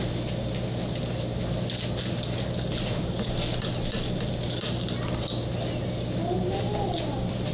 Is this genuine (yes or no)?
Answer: yes